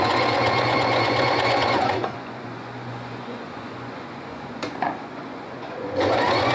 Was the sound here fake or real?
fake